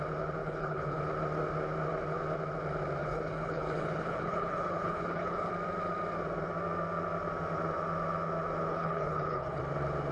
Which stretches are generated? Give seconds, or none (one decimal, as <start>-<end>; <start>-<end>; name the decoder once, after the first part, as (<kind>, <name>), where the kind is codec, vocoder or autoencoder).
0.4-1.0 (codec, HILCodec); 3.0-5.5; 8.7-9.6